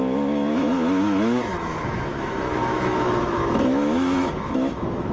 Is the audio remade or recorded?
remade